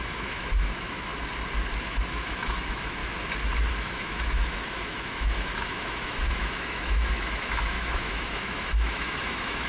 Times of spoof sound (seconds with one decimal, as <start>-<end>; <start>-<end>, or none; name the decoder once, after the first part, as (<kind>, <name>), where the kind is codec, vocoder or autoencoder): 0.0-1.1 (autoencoder, DAC-VAE); 1.8-3.0; 3.7-9.7